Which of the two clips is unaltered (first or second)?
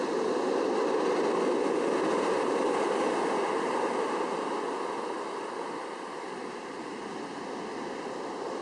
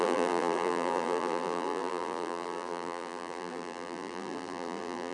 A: first